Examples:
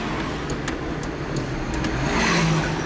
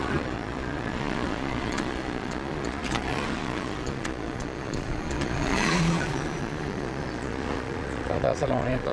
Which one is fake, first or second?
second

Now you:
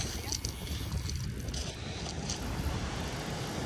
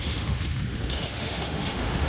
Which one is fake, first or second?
second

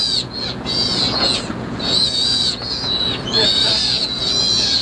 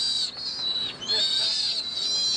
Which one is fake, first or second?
first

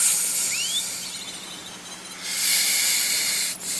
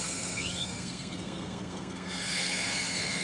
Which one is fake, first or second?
second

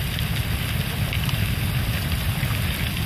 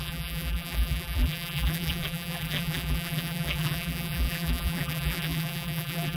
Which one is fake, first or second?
second